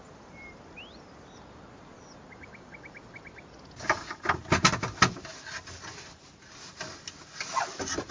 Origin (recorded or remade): recorded